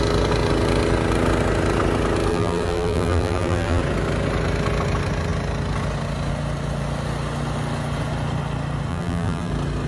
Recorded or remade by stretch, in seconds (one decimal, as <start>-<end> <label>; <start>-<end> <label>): 0.0-2.3 recorded; 2.3-3.8 remade; 3.8-8.9 recorded; 8.9-9.5 remade; 9.5-9.9 recorded